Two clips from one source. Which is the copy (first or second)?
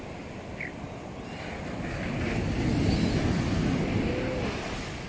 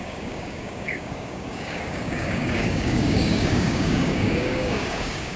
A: second